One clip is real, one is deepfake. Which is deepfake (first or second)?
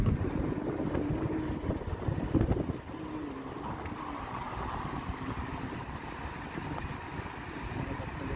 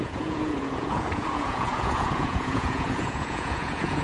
second